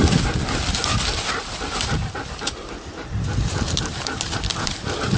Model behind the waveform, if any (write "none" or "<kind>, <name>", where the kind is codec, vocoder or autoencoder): none